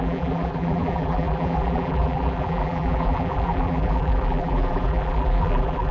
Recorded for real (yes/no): no